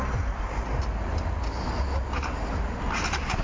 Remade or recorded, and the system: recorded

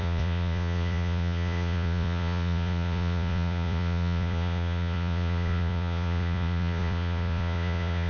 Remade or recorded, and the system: remade, vocoder, Vocos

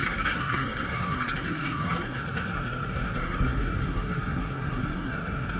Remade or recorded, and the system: remade, codec, SNAC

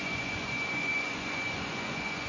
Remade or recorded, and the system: remade, vocoder, Vocos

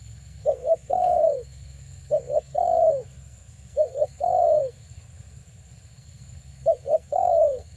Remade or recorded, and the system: remade, codec, SNAC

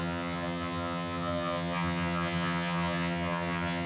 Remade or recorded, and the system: remade, vocoder, HiFi-GAN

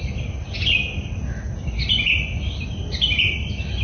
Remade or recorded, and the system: recorded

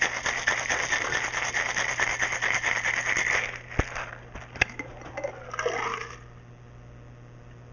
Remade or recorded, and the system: recorded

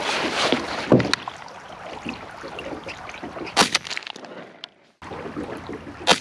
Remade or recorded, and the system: recorded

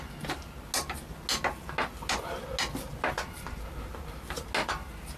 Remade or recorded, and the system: recorded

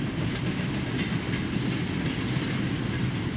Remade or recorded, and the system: recorded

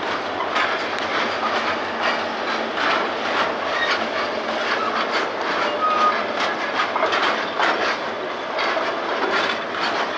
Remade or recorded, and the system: recorded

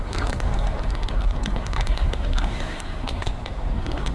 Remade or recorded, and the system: remade, codec, SNAC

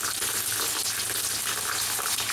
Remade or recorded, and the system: recorded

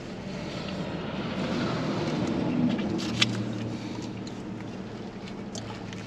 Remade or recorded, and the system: recorded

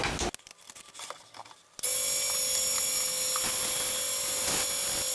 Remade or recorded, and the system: recorded